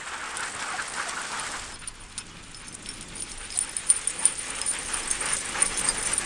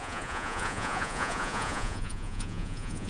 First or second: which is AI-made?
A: second